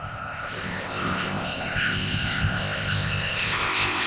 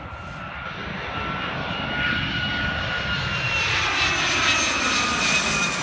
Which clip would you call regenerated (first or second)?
first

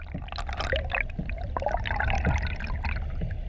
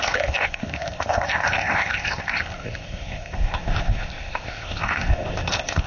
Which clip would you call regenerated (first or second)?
second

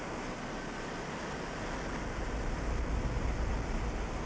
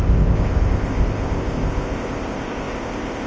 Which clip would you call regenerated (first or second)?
second